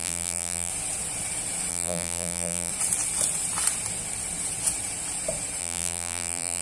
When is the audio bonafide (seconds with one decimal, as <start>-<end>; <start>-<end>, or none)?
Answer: 0.7-1.7; 2.7-5.6